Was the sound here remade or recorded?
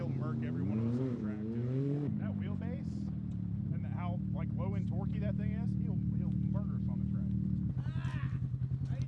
recorded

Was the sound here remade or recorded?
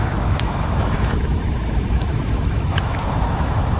remade